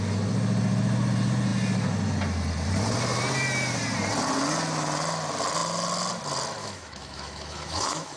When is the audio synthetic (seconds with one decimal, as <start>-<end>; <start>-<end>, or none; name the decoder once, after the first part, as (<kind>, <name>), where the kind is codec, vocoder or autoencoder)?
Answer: 6.6-8.2 (autoencoder, DAC-VAE)